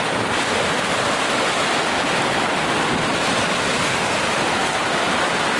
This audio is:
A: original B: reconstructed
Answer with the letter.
A